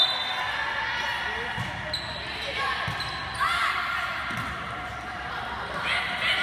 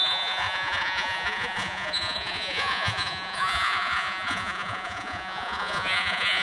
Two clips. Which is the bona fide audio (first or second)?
first